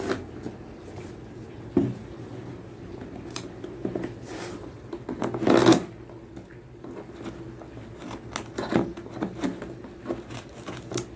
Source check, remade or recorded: recorded